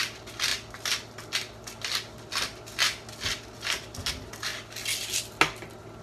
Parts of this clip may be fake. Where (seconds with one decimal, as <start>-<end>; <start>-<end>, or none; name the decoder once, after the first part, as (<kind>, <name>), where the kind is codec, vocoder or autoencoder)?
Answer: none